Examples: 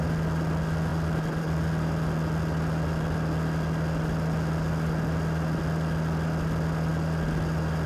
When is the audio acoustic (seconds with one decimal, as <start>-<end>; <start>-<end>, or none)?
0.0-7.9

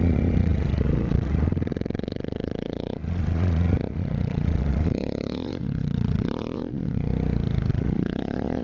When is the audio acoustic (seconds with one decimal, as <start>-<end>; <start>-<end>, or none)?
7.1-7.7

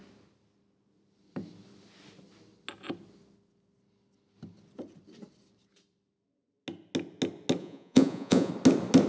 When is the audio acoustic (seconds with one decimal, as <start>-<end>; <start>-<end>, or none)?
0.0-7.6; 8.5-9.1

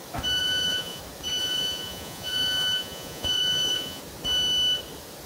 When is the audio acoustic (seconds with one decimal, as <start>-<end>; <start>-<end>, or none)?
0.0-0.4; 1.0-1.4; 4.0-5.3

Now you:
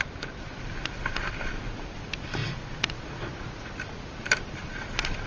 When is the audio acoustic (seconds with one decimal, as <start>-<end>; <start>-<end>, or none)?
0.0-5.3

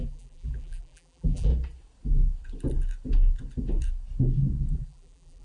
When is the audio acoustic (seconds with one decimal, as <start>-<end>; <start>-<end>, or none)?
1.5-4.7

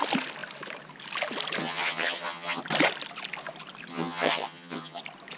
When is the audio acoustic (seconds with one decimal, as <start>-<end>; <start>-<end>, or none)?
0.0-1.6; 2.6-3.9; 5.0-5.4